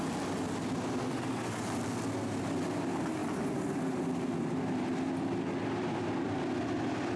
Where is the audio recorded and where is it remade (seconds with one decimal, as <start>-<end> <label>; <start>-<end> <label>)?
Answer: 0.0-7.2 recorded